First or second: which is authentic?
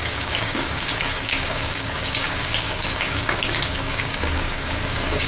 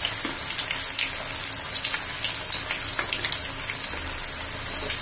second